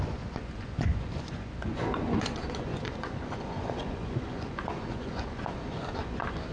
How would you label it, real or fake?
fake